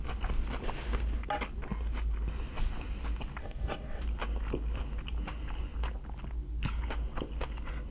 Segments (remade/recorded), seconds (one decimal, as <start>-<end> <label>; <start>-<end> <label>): 0.0-3.4 recorded; 3.4-4.0 remade; 4.0-7.9 recorded